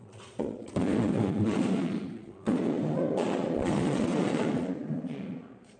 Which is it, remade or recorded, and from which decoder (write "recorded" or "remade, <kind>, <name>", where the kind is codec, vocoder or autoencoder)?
remade, vocoder, Vocos